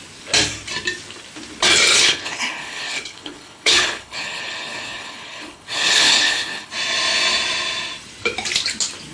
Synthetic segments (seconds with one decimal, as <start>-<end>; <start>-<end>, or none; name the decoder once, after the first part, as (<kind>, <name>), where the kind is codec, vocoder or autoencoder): 1.9-6.7 (codec, HILCodec)